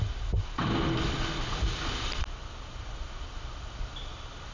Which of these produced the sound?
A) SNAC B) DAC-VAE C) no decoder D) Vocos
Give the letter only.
C